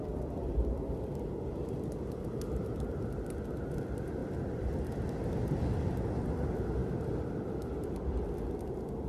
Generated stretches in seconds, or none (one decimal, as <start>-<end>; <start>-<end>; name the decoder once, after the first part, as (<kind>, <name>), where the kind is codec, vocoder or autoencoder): 6.8-7.3 (vocoder, BigVGAN v2)